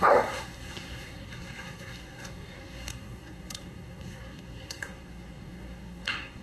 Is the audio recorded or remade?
remade